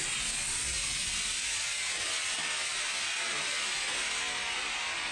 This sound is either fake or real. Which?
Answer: real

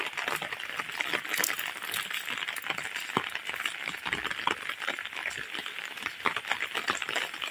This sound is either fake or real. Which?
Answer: real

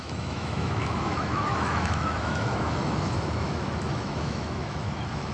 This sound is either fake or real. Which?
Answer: fake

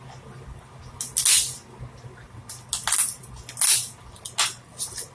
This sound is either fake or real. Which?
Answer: real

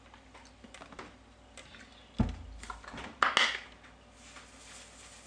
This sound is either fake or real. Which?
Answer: real